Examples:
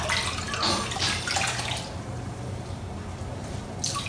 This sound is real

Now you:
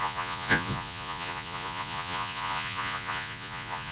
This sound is fake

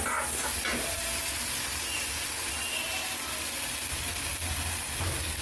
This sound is real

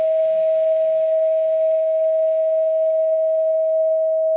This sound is fake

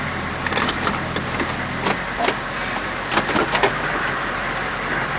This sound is real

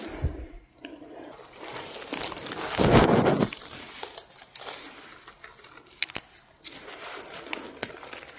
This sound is real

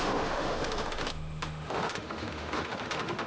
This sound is fake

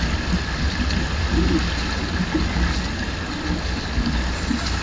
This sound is real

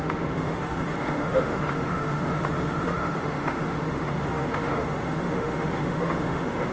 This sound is fake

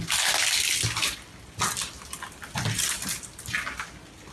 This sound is real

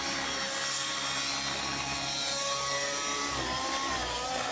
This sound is real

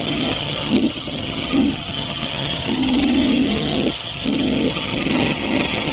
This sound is fake